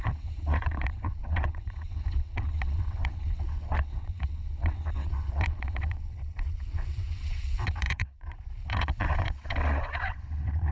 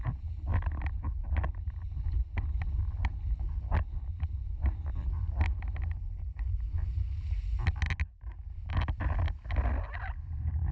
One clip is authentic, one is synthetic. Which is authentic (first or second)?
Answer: second